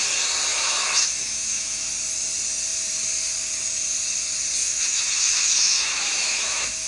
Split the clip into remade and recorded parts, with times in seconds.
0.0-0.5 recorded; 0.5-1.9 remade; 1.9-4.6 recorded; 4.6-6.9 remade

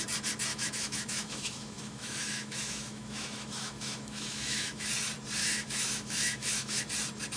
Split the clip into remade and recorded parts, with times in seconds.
0.0-0.5 recorded; 0.5-4.9 remade; 4.9-5.4 recorded; 5.4-6.8 remade; 6.8-7.4 recorded

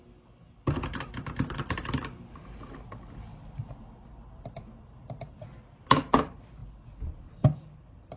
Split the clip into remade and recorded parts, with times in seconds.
0.0-8.2 recorded

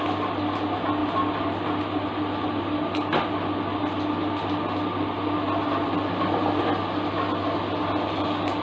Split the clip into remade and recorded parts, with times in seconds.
0.0-8.6 recorded

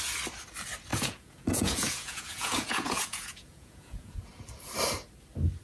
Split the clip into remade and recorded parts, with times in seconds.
0.0-0.9 recorded; 0.9-4.3 remade; 4.3-5.6 recorded

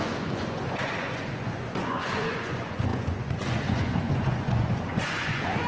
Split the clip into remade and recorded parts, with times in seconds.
0.0-5.7 remade

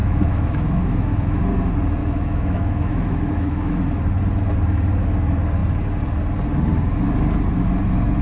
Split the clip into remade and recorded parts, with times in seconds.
0.0-1.4 remade; 1.4-2.0 recorded; 2.0-3.8 remade; 3.8-8.2 recorded